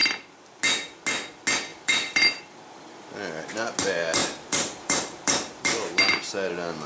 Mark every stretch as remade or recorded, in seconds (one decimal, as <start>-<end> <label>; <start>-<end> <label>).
0.0-0.6 remade; 0.6-1.7 recorded; 1.7-3.0 remade; 3.0-4.2 recorded; 4.2-6.5 remade; 6.5-6.9 recorded